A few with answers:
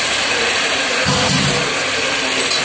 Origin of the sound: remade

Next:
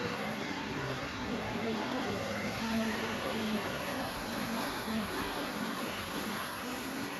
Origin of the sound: remade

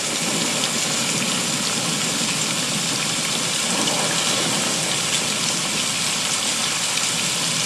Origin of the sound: recorded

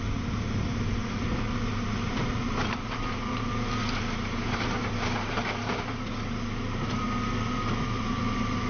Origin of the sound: remade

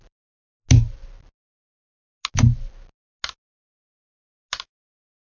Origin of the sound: recorded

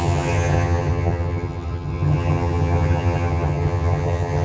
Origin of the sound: remade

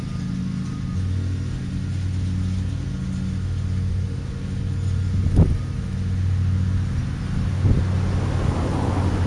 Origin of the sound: recorded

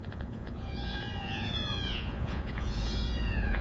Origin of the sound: remade